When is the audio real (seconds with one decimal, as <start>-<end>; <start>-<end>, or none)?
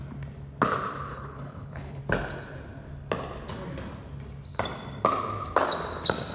0.0-1.1; 2.0-6.3